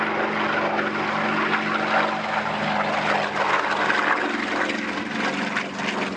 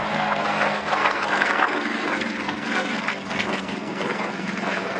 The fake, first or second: second